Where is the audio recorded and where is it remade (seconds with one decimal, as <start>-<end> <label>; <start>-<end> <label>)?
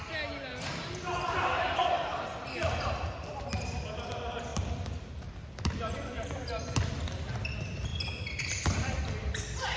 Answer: 0.0-4.5 recorded; 4.5-6.3 remade; 6.3-7.9 recorded; 7.9-9.0 remade; 9.0-9.8 recorded